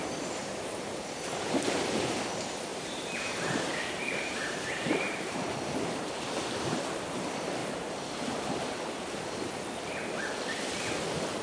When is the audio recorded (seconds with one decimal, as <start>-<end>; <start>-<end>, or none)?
0.0-0.4; 1.7-2.7; 6.1-7.6; 9.2-11.4